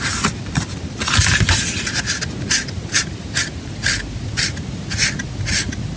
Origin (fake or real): real